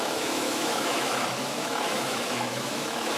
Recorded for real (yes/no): no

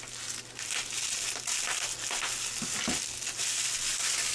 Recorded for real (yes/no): yes